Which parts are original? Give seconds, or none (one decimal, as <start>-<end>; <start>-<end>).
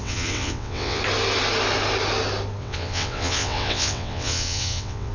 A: 1.0-2.6